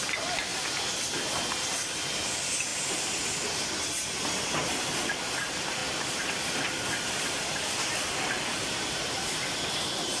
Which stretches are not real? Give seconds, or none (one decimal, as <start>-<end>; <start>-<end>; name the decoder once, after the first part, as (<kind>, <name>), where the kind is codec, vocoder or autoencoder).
none